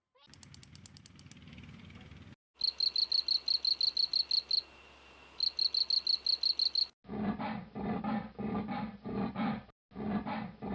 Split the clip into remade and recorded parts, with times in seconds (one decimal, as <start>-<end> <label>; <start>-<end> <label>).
0.0-10.7 recorded